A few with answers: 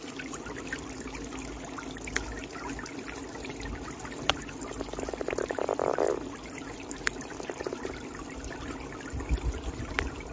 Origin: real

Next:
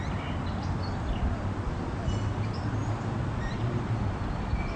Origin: fake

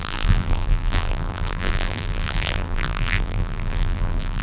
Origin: fake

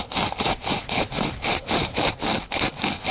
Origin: real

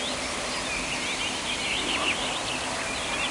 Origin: real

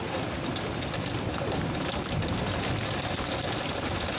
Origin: real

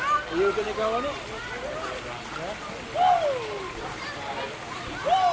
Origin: real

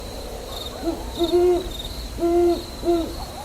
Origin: fake